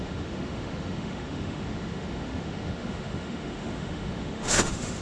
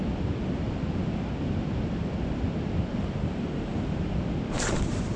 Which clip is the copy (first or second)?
first